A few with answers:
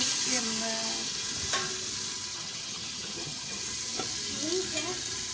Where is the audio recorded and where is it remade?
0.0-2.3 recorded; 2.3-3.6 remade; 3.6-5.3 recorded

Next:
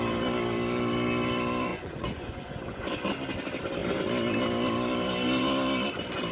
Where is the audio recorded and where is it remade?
0.0-1.7 recorded; 1.7-2.8 remade; 2.8-6.3 recorded